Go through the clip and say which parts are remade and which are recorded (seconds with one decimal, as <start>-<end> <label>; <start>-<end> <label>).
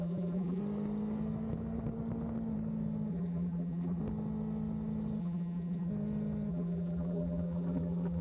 0.0-0.6 remade; 0.6-3.1 recorded; 3.1-4.0 remade; 4.0-5.2 recorded; 5.2-5.9 remade; 5.9-6.5 recorded; 6.5-8.2 remade